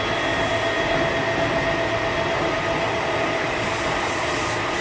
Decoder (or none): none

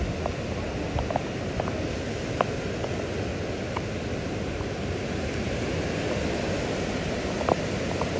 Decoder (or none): none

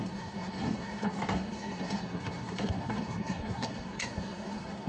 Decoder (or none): codec, SNAC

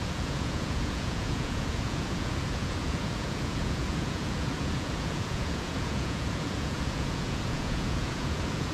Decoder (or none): vocoder, Vocos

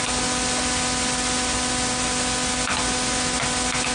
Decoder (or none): none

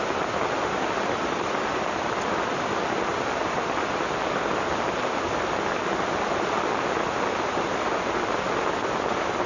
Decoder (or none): none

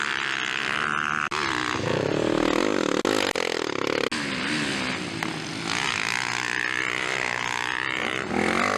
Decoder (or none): none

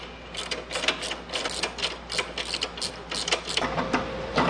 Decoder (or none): none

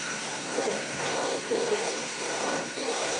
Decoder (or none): codec, SNAC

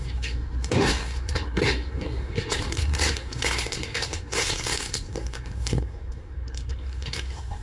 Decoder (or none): codec, SNAC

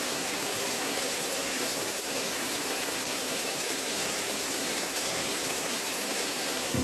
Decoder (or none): codec, SNAC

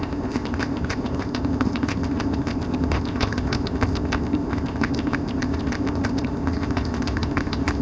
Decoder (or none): codec, ZipCodec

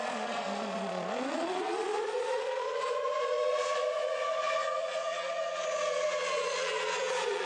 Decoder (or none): vocoder, Vocos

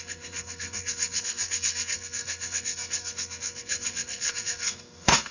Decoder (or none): codec, SNAC